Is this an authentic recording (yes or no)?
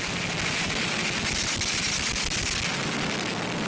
yes